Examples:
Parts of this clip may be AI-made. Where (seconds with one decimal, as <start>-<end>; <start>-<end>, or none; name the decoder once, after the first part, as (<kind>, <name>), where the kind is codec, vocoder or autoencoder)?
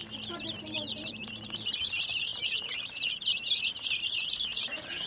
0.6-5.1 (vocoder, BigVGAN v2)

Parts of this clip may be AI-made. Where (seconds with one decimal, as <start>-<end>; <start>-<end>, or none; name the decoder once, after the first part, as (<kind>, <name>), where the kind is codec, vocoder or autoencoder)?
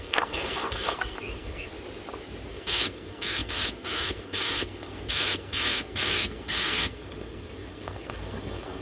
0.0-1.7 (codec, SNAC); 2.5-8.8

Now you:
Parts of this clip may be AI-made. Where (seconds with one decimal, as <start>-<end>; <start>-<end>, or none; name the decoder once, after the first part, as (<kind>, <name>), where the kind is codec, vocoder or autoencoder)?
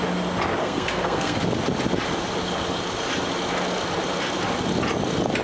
0.6-1.4 (codec, SNAC)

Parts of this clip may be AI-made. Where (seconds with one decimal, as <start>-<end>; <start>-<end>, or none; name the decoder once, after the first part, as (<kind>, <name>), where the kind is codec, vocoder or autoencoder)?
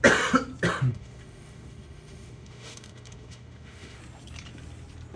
0.9-4.0 (autoencoder, DAC-VAE)